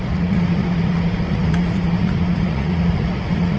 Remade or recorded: remade